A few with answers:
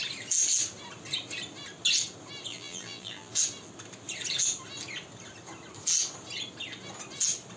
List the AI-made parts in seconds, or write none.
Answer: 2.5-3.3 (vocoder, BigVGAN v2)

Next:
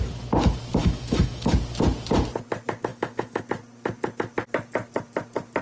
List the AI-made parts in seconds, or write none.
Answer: 0.8-1.5 (autoencoder, DAC-VAE); 2.9-3.4

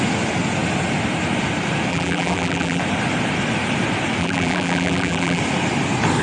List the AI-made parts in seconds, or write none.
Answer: 1.9-2.8 (vocoder, BigVGAN v2); 4.2-5.4

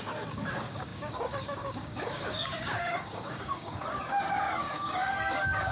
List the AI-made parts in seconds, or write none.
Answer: 0.0-5.7 (codec, DAC)

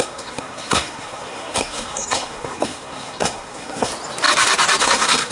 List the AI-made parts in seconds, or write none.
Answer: 0.0-3.9 (codec, SNAC); 4.8-5.3

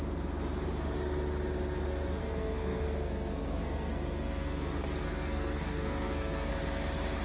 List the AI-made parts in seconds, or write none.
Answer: 2.2-6.5 (codec, SNAC)